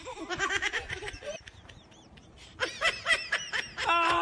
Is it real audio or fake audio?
fake